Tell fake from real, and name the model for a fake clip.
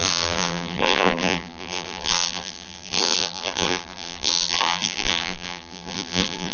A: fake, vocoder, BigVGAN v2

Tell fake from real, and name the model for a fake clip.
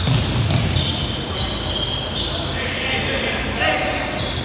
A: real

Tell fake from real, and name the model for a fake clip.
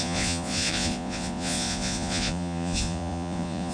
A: fake, vocoder, Vocos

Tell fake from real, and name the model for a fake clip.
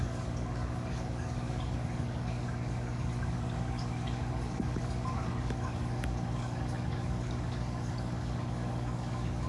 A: fake, codec, DAC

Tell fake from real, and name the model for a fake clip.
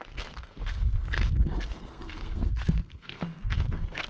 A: fake, codec, SNAC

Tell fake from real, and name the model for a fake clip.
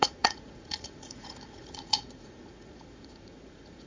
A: fake, vocoder, Vocos